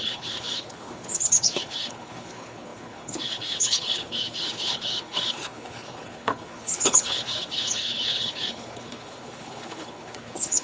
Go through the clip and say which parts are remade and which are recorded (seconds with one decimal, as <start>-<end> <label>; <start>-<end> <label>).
0.0-10.6 remade